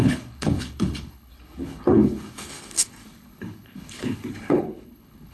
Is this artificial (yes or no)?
yes